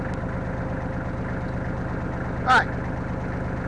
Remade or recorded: recorded